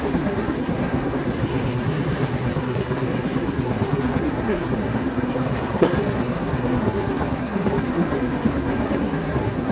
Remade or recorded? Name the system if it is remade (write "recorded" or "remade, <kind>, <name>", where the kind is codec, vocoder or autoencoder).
remade, codec, SNAC